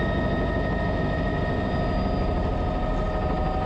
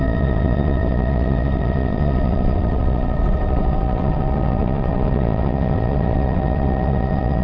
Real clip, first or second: first